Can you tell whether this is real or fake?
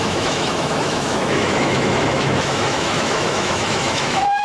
fake